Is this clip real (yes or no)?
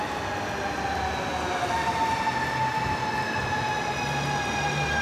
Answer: yes